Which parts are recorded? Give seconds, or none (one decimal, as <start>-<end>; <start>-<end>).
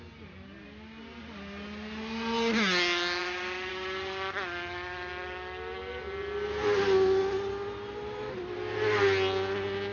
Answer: 0.0-9.9